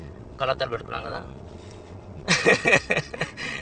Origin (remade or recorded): remade